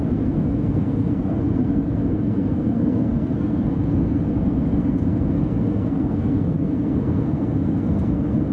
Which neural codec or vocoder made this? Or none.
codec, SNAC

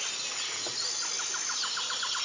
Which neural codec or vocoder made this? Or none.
none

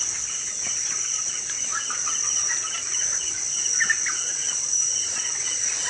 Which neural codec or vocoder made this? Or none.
none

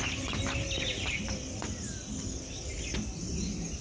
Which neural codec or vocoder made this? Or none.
none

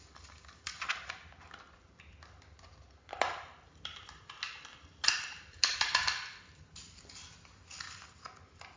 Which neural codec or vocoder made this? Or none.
none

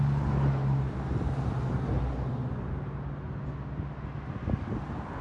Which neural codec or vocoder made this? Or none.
none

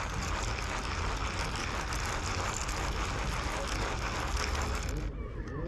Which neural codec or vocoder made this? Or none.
none